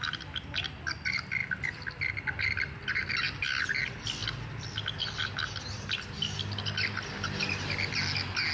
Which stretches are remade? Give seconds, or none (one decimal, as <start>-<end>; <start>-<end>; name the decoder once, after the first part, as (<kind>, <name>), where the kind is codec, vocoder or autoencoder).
none